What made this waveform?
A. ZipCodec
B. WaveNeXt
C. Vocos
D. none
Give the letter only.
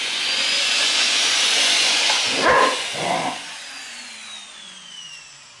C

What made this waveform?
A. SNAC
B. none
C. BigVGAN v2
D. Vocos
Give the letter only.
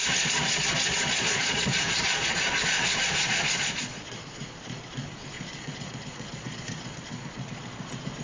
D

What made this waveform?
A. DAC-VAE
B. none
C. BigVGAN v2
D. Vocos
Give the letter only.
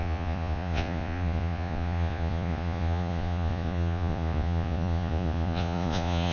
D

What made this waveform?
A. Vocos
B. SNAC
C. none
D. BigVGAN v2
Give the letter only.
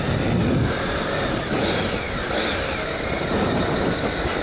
C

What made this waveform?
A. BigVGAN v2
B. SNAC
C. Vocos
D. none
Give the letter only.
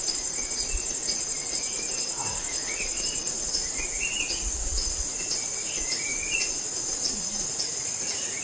C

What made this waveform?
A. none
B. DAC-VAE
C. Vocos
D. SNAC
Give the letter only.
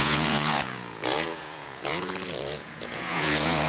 C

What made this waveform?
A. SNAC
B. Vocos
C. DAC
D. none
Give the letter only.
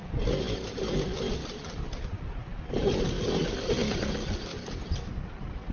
D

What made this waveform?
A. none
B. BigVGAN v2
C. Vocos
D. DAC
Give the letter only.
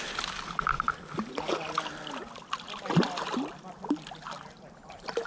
A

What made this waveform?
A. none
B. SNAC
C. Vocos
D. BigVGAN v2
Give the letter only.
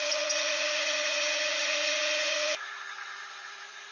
C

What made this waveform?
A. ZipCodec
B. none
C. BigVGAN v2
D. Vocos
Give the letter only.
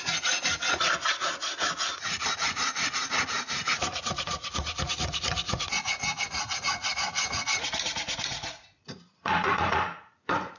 D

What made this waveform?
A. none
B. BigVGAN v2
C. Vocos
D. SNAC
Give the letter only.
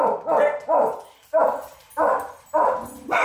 A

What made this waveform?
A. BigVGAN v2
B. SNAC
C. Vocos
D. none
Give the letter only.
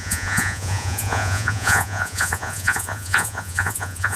C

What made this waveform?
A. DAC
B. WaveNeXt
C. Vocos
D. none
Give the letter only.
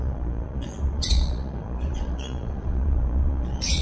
C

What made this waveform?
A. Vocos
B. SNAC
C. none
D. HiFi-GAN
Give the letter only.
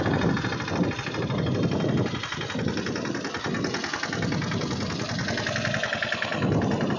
C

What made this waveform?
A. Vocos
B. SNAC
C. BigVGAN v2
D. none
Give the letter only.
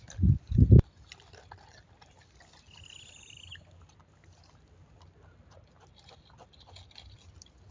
D